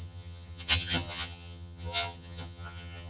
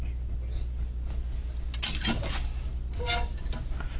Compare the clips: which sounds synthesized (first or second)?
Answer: first